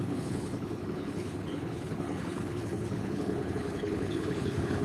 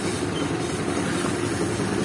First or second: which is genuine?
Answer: second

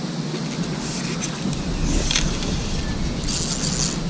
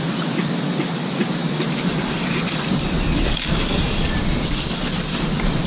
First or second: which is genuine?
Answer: first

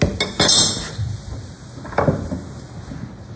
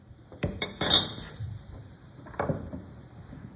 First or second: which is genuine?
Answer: first